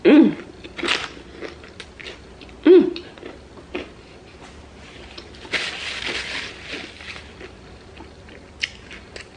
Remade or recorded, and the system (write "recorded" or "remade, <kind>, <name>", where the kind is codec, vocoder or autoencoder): recorded